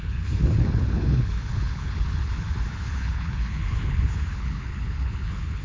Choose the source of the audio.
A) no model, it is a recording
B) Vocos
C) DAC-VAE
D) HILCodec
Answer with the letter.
D